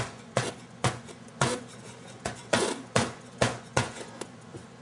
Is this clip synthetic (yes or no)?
yes